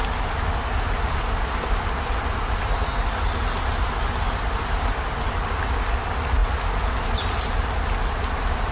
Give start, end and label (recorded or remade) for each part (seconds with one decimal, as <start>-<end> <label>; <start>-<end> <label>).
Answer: 0.0-8.7 recorded